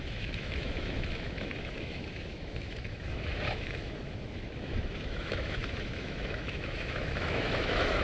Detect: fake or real fake